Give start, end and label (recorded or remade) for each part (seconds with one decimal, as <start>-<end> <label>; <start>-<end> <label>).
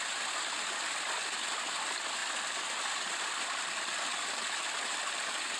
0.0-5.6 recorded